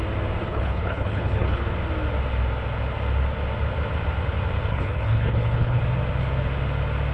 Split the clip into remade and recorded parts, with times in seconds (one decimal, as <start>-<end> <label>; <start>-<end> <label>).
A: 0.0-0.4 recorded; 0.4-1.6 remade; 1.6-4.7 recorded; 4.7-5.8 remade; 5.8-7.1 recorded